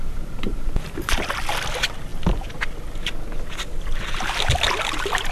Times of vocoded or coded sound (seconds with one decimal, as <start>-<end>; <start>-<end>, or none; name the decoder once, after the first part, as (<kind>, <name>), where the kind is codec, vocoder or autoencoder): 0.5-1.3 (vocoder, BigVGAN v2)